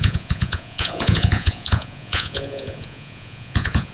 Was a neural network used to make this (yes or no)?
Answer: yes